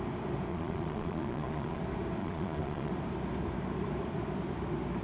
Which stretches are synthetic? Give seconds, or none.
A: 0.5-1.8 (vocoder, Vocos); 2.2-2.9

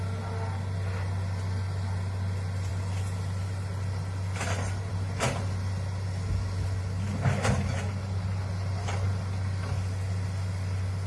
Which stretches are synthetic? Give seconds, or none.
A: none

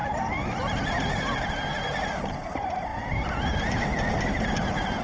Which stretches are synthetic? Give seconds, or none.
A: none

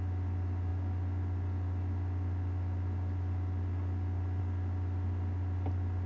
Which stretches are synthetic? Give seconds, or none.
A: none

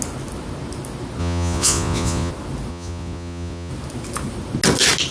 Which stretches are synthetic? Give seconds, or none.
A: 1.2-2.3 (vocoder, Vocos); 2.7-3.7

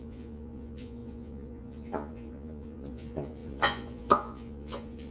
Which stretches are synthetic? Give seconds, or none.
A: 0.0-5.1 (vocoder, Vocos)

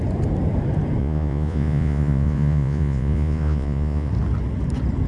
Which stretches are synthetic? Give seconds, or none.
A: 1.0-4.1 (vocoder, Vocos)